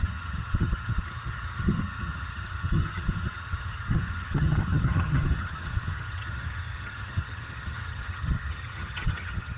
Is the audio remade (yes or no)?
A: yes